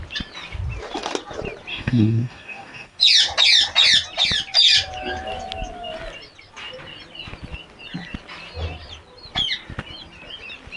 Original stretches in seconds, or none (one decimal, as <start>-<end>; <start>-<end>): 0.0-1.7; 3.0-10.8